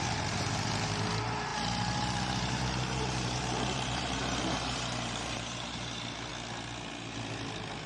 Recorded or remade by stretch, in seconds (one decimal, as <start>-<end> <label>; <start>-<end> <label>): 0.0-6.3 remade; 6.3-7.9 recorded